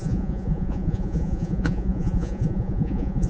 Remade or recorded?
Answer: remade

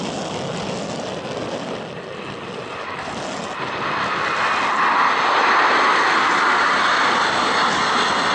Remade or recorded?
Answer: recorded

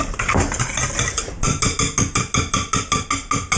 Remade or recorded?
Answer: recorded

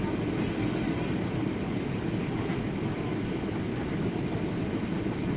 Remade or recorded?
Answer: recorded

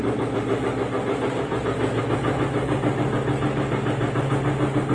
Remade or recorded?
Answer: recorded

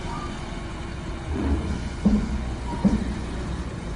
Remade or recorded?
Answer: remade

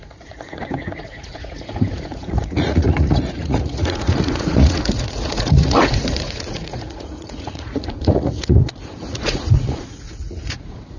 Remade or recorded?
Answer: remade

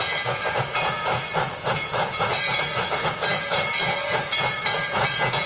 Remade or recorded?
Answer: remade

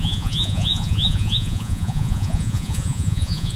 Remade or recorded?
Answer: remade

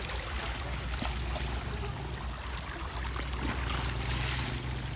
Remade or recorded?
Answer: recorded